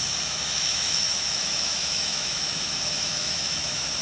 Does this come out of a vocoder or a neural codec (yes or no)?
yes